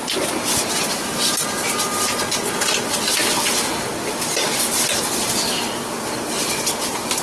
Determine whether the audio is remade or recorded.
recorded